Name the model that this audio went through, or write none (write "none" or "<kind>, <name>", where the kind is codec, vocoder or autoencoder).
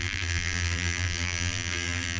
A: vocoder, BigVGAN v2